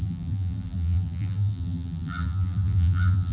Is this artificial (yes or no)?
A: yes